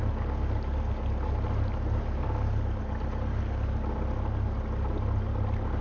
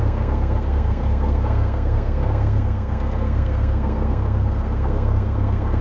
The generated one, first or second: second